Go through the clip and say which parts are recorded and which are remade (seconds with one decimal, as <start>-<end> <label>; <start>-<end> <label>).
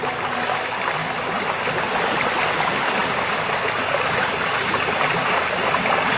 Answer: 0.0-6.2 recorded